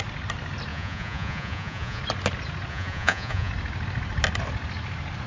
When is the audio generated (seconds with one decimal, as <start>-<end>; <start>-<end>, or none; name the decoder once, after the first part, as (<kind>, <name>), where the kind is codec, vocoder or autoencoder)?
0.7-2.0 (vocoder, Vocos); 2.7-3.5